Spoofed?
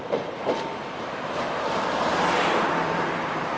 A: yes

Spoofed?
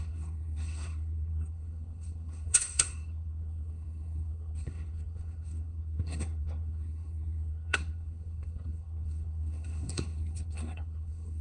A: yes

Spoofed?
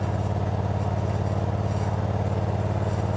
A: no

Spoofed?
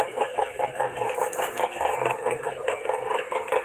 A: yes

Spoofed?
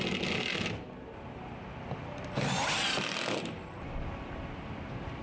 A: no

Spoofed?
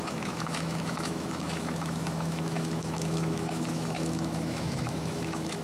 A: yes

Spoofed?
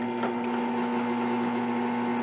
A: no